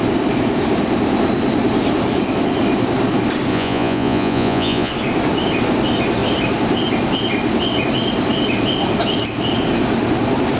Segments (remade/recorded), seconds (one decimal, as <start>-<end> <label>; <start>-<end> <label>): 0.0-3.5 recorded; 3.5-4.9 remade; 4.9-10.6 recorded